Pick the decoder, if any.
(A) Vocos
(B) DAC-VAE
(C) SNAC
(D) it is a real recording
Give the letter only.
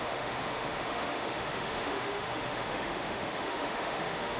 B